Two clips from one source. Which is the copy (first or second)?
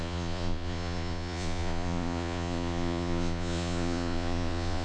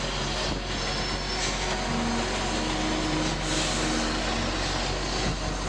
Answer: first